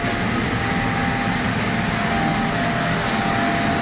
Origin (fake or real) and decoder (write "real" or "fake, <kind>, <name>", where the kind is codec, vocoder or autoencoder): real